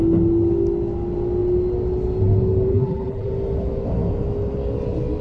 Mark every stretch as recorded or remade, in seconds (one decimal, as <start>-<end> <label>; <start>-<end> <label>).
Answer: 0.0-2.7 recorded; 2.7-3.3 remade; 3.3-5.2 recorded